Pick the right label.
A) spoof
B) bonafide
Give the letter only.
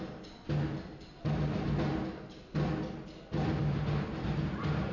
B